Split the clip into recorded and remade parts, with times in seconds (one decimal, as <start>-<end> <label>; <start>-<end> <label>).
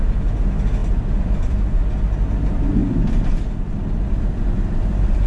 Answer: 0.0-0.8 recorded; 0.8-1.9 remade; 1.9-2.8 recorded; 2.8-5.3 remade